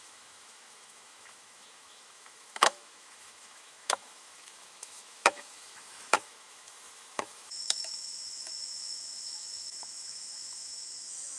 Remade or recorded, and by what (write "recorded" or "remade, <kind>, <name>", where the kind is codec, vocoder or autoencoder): remade, autoencoder, DAC-VAE